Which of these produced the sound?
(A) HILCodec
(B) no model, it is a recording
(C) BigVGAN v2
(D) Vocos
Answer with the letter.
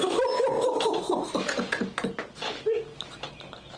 B